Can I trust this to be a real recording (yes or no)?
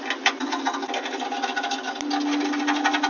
yes